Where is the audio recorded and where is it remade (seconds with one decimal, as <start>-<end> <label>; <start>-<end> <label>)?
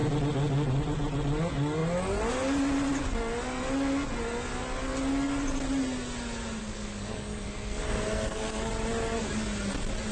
0.0-6.6 recorded; 6.6-8.7 remade; 8.7-10.1 recorded